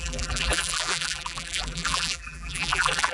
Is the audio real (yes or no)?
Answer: no